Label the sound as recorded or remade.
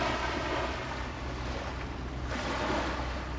recorded